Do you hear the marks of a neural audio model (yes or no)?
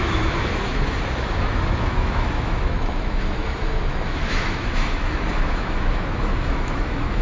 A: yes